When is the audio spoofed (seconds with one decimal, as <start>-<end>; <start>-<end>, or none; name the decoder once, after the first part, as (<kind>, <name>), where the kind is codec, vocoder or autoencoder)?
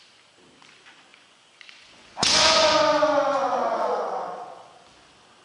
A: 1.1-2.8 (vocoder, Vocos); 3.6-4.7